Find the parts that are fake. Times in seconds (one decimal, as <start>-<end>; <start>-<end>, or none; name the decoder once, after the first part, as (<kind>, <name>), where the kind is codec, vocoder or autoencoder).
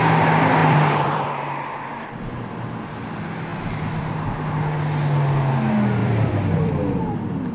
0.6-2.1 (vocoder, BigVGAN v2); 3.5-4.1; 6.0-6.7